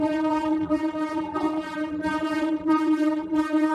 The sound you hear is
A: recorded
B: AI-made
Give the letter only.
B